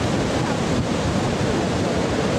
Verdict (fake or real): real